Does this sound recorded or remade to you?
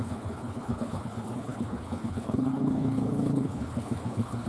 remade